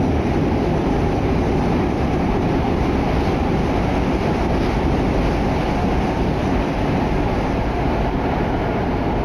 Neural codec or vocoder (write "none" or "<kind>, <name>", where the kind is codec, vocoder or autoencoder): none